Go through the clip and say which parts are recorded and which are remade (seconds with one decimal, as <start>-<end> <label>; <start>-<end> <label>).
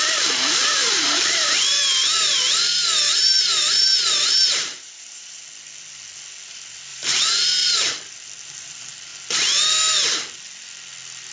0.0-0.8 recorded; 0.8-1.6 remade; 1.6-2.1 recorded; 2.1-5.4 remade; 5.4-6.9 recorded; 6.9-7.9 remade; 7.9-11.3 recorded